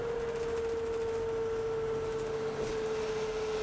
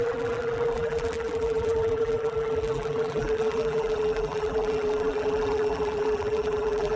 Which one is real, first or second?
first